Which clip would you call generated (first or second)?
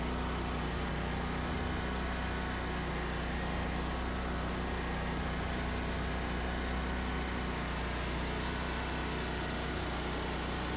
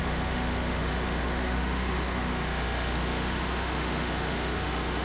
second